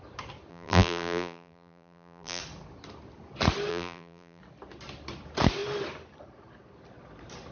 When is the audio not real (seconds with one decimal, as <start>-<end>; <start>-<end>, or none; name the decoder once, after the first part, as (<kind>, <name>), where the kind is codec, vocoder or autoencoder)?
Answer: 0.5-2.4 (vocoder, BigVGAN v2); 3.7-4.4

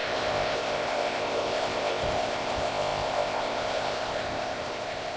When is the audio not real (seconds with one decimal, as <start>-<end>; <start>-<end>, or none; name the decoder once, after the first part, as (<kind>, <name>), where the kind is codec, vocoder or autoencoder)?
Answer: 0.0-5.2 (codec, ZipCodec)

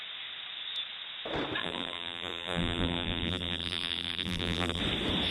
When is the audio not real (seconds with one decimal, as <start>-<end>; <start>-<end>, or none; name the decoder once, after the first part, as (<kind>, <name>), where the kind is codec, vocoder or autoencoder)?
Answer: 1.6-4.8 (vocoder, BigVGAN v2)

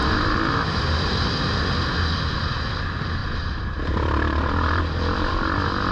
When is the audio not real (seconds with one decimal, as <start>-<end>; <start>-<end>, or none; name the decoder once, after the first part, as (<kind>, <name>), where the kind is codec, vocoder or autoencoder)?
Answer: 0.0-1.6 (vocoder, BigVGAN v2); 3.2-4.8

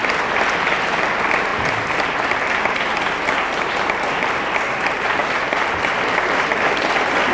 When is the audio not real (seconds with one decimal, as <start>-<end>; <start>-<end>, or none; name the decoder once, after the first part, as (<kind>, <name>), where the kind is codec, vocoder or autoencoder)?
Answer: 0.0-7.3 (vocoder, BigVGAN v2)

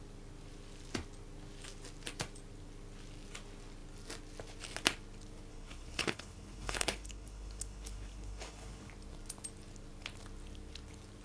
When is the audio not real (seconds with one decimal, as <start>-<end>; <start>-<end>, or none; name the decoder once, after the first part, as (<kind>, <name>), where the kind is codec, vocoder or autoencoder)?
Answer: 5.5-8.9 (codec, HILCodec)

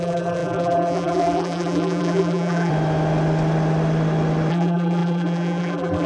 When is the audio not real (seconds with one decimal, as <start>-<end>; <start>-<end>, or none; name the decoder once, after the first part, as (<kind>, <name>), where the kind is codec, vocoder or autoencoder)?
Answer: 0.0-2.7 (vocoder, BigVGAN v2); 4.5-6.1

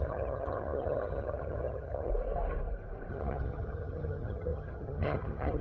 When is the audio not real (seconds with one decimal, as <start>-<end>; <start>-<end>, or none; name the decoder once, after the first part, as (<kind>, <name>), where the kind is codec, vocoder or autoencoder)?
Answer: 0.0-2.1 (vocoder, HiFi-GAN); 3.1-5.6